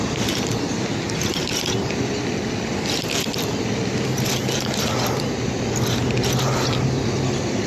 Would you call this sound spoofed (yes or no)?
no